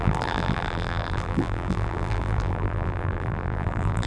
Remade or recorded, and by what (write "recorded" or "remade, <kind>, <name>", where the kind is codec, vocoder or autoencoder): remade, vocoder, BigVGAN v2